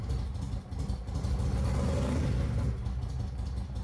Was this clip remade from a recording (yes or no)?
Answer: no